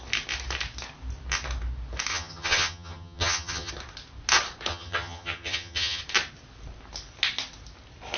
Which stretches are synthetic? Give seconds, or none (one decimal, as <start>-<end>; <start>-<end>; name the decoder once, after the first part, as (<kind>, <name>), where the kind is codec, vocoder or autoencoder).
2.1-3.7 (vocoder, HiFi-GAN); 4.7-6.0